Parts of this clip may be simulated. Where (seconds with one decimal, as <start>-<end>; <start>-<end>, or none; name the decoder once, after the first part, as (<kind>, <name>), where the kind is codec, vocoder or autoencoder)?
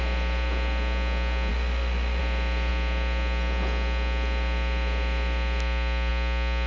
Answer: 1.5-2.2 (autoencoder, DAC-VAE)